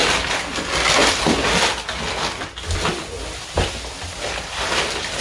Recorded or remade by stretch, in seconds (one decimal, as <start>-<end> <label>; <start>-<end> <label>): 0.0-5.2 recorded

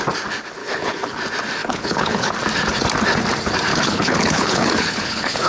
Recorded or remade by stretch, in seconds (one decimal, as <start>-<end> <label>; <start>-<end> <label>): 0.0-0.6 recorded; 0.6-1.2 remade; 1.2-1.6 recorded; 1.6-2.3 remade; 2.3-3.7 recorded; 3.7-5.5 remade

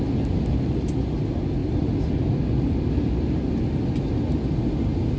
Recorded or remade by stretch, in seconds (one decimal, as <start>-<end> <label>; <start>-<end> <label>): 0.0-5.2 recorded

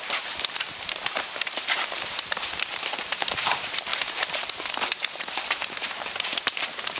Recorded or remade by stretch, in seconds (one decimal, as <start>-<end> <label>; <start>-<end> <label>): 0.0-7.0 remade

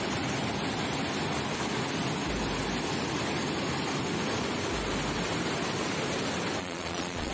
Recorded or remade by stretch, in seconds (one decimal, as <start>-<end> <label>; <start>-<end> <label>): 0.0-6.6 recorded; 6.6-7.3 remade